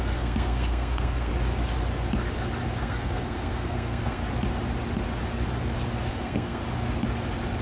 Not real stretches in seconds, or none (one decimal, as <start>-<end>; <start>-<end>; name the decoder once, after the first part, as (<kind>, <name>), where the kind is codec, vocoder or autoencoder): 0.0-1.3 (codec, SNAC); 2.8-4.2; 6.1-6.6